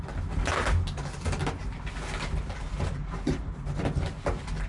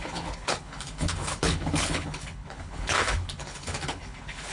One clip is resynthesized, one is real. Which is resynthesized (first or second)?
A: second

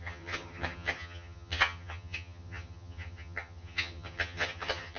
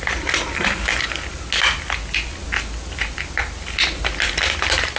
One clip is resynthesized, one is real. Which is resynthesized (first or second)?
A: first